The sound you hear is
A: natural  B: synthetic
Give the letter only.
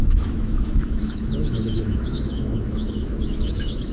B